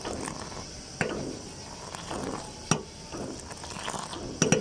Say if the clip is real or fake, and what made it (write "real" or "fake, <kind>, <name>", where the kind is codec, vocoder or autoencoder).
real